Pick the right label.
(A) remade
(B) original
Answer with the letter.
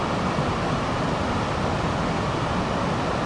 B